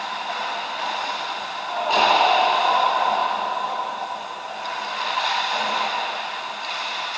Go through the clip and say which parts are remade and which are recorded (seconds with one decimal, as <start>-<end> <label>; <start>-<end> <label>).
0.0-3.2 recorded; 3.2-6.4 remade; 6.4-7.2 recorded